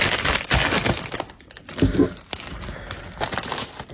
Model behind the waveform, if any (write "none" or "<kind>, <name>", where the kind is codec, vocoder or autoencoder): none